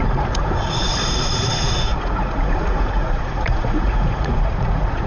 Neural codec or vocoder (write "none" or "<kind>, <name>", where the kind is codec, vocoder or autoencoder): vocoder, Vocos